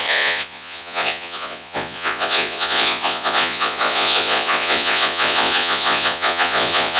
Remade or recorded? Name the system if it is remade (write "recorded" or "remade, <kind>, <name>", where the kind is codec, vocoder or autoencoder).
remade, vocoder, Vocos